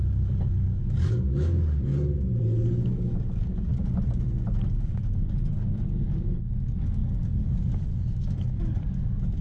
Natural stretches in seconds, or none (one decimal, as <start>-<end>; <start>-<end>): 1.9-2.4; 3.7-4.7